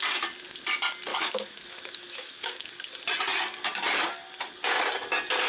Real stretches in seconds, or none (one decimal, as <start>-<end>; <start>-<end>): 0.0-1.1; 2.7-5.5